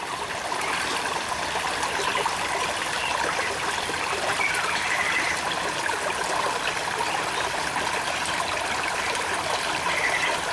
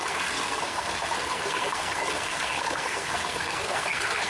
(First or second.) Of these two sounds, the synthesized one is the second